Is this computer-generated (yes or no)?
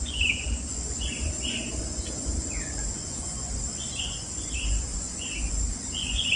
yes